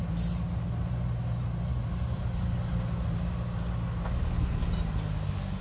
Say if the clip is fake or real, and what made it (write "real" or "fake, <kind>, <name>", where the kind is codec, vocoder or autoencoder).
real